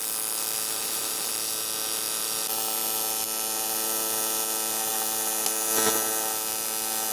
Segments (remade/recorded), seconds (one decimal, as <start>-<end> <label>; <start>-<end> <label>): 0.0-0.7 recorded; 0.7-1.3 remade; 1.3-7.1 recorded